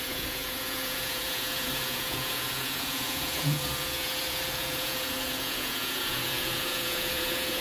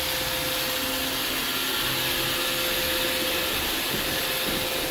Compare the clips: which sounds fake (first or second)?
first